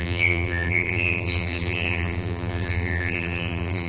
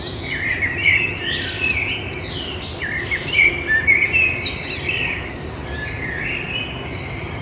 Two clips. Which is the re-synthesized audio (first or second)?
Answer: first